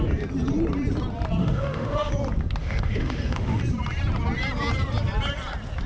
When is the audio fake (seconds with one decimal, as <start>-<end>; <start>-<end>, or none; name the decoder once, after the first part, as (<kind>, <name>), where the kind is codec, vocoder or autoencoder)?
1.4-2.1 (autoencoder, DAC-VAE); 2.6-3.6